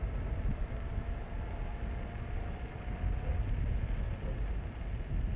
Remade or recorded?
recorded